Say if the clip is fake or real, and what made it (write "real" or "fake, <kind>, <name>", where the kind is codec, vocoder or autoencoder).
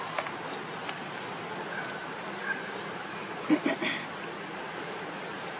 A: real